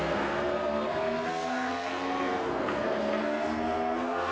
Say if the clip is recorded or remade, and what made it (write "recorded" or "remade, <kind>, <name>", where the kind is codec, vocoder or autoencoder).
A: remade, codec, SNAC